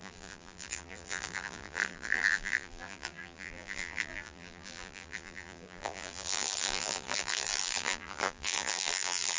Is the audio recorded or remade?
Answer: remade